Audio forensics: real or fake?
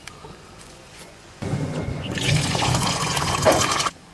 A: fake